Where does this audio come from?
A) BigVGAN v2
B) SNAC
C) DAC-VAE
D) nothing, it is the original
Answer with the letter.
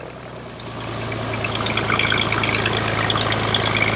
D